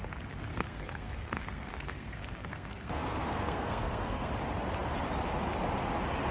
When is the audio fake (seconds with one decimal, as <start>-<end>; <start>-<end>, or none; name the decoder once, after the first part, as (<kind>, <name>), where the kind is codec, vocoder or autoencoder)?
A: 0.5-4.3 (codec, SNAC)